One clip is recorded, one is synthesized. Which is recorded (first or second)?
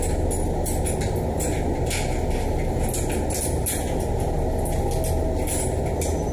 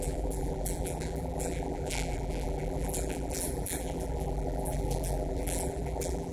first